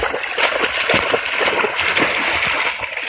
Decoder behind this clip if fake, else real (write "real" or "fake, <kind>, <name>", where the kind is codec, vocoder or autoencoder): real